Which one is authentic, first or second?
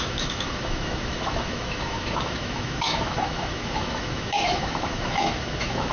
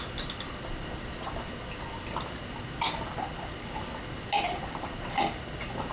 second